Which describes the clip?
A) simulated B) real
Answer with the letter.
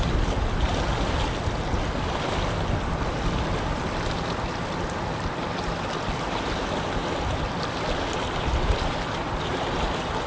B